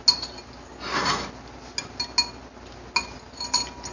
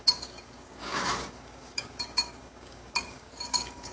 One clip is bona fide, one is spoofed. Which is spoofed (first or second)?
second